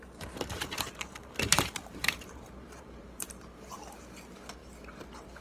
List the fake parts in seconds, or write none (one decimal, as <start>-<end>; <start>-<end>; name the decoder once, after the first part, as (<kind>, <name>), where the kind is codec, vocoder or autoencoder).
1.2-3.8 (vocoder, BigVGAN v2); 4.6-5.4

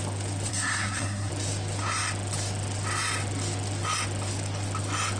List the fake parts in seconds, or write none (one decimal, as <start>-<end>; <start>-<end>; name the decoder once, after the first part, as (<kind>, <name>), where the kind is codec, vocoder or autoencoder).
0.5-1.3 (codec, SNAC)